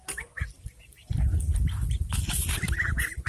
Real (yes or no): yes